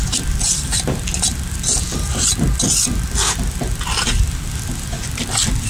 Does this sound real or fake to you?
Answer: real